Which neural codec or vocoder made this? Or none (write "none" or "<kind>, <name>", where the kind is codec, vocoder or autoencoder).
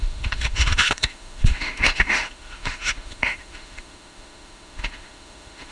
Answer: autoencoder, DAC-VAE